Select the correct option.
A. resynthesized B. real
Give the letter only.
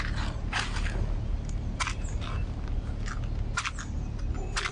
B